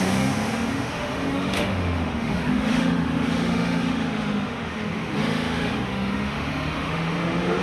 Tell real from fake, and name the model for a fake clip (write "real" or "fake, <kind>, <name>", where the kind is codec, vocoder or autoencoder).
fake, autoencoder, DAC-VAE